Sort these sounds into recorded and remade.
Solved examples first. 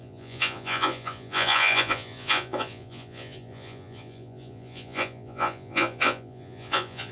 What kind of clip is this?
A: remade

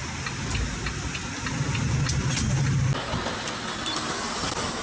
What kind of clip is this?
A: recorded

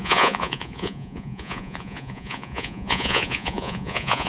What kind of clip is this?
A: remade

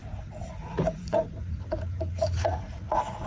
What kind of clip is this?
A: remade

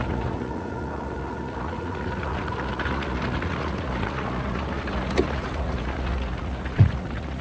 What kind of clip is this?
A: remade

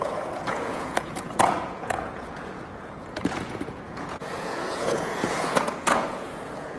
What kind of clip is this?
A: remade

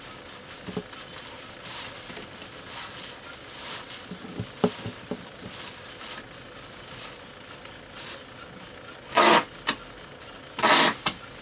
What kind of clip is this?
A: recorded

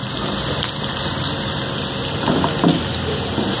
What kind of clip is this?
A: recorded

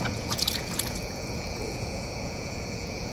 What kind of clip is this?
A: remade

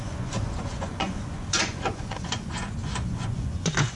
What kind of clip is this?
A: remade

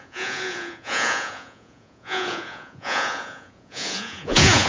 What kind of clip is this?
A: remade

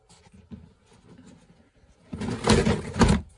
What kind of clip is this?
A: recorded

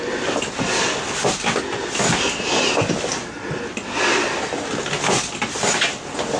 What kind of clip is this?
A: recorded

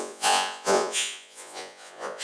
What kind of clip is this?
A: remade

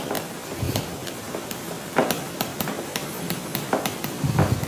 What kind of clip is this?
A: recorded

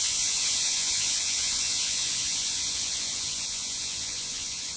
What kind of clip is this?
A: remade